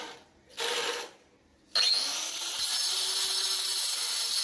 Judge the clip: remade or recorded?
recorded